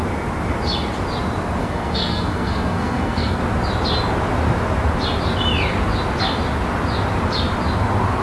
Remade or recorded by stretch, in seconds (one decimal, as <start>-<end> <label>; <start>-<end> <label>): 0.0-1.6 recorded; 1.6-3.4 remade; 3.4-8.2 recorded